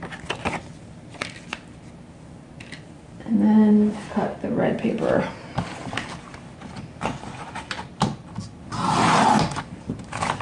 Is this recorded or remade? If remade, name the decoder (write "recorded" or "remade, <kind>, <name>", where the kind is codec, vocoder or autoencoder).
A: recorded